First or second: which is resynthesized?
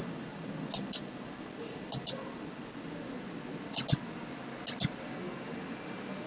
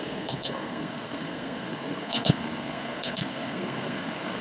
second